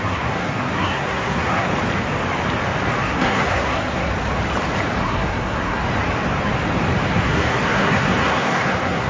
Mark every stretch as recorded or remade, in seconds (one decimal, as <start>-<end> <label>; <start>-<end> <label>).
0.0-1.7 remade; 1.7-3.0 recorded; 3.0-4.1 remade; 4.1-5.0 recorded; 5.0-5.8 remade; 5.8-7.1 recorded; 7.1-9.1 remade

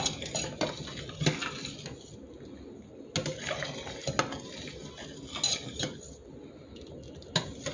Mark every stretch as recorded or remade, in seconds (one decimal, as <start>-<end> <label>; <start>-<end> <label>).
0.0-7.7 recorded

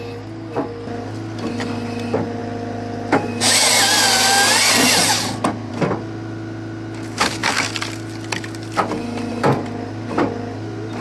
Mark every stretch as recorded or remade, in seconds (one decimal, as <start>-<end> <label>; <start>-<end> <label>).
0.0-11.0 recorded

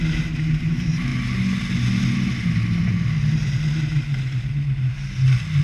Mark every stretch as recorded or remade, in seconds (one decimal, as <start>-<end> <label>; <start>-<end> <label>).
0.0-5.6 recorded

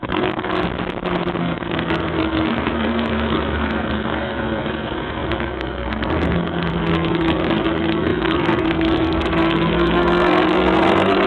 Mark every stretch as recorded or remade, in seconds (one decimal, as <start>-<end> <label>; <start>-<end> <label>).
0.0-0.5 remade; 0.5-1.4 recorded; 1.4-11.3 remade